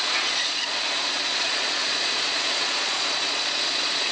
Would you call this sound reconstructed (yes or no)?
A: yes